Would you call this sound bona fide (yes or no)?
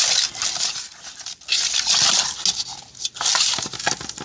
yes